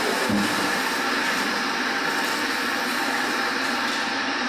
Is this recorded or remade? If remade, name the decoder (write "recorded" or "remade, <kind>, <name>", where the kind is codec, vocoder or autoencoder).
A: recorded